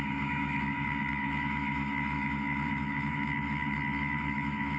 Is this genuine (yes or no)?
no